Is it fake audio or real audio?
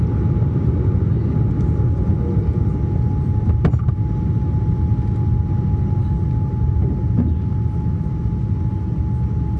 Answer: real